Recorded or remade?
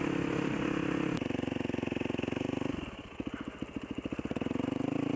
recorded